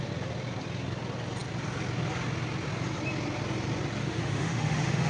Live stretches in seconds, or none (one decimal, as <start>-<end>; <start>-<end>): 0.0-4.0